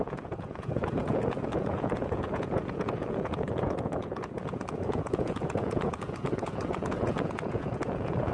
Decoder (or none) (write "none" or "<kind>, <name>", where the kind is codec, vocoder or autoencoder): vocoder, Vocos